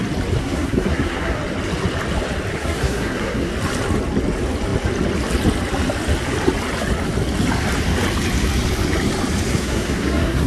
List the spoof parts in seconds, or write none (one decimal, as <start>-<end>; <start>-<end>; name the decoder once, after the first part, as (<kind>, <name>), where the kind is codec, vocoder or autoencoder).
0.4-1.4 (codec, SNAC); 2.5-3.5; 9.5-10.5